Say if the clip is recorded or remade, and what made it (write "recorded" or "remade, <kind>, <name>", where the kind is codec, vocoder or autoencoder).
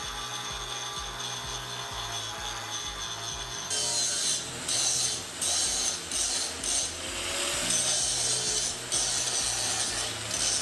recorded